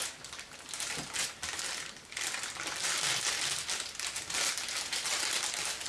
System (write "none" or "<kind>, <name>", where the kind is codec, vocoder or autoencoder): none